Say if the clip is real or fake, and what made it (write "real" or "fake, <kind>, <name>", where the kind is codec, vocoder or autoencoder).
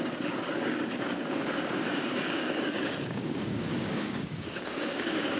fake, codec, DAC